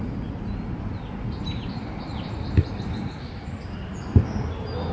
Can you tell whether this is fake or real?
real